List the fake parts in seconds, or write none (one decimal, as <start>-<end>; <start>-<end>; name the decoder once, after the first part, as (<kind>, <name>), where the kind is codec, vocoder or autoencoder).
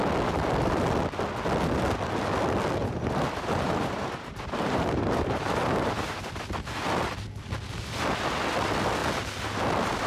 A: 2.8-6.4 (vocoder, BigVGAN v2)